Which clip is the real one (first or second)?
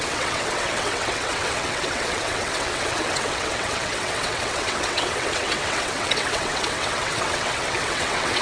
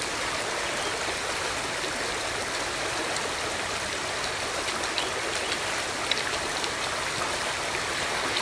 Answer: second